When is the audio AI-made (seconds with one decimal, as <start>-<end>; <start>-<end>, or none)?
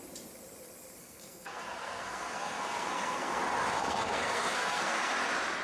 1.0-3.4; 3.8-5.1